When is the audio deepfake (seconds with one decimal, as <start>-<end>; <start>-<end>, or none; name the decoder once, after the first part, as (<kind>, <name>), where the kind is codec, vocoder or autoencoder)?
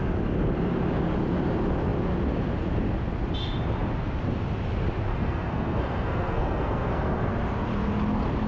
5.1-7.3 (codec, SNAC)